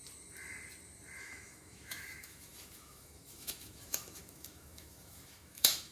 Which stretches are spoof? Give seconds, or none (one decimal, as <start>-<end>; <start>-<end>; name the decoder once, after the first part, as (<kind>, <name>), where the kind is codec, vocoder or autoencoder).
1.2-5.9 (autoencoder, DAC-VAE)

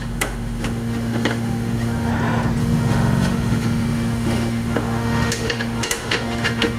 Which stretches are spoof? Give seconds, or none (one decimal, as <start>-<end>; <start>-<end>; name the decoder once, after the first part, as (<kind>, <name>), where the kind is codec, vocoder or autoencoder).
0.0-2.1 (autoencoder, DAC-VAE); 2.6-6.8